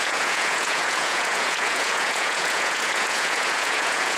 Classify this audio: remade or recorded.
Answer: remade